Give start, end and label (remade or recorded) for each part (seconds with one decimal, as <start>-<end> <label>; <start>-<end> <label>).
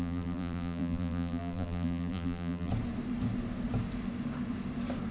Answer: 0.0-2.7 remade; 2.7-5.1 recorded